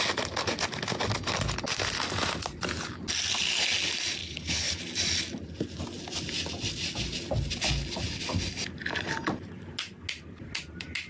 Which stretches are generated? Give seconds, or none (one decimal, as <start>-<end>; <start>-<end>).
4.2-4.8